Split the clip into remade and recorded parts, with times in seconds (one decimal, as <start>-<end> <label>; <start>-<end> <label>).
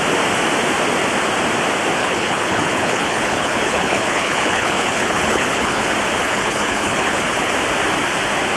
0.0-2.0 recorded; 2.0-5.8 remade; 5.8-6.2 recorded; 6.2-7.5 remade; 7.5-8.6 recorded